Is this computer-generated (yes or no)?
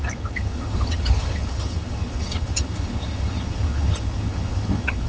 yes